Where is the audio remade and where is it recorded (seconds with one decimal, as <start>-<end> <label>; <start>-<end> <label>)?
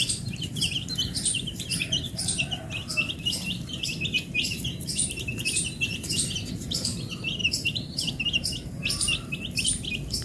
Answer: 0.0-10.2 remade